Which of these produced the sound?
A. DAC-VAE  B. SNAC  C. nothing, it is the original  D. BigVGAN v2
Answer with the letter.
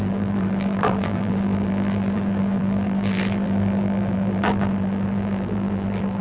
D